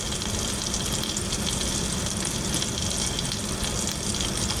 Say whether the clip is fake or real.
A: real